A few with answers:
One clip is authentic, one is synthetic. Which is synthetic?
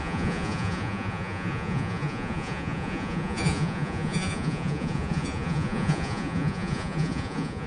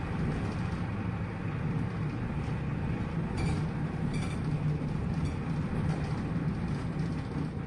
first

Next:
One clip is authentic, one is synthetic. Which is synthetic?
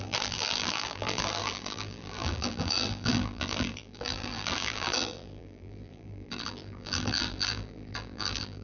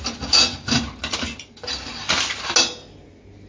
first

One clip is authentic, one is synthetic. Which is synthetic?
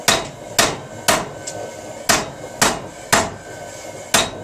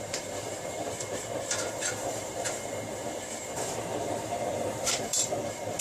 second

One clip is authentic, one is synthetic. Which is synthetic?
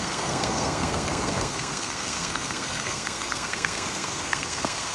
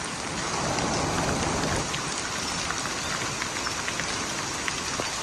first